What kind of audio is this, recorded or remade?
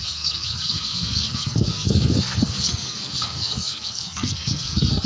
remade